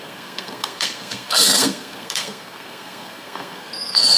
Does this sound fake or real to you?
fake